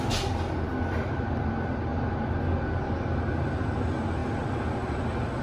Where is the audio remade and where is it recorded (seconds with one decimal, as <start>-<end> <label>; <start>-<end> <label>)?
0.0-5.4 recorded